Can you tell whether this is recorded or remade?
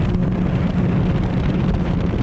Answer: recorded